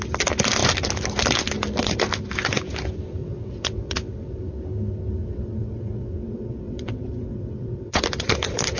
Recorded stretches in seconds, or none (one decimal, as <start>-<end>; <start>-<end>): 0.0-3.2; 4.4-5.2; 8.0-8.8